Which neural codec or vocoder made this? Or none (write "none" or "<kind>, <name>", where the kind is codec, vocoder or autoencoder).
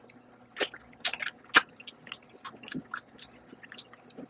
none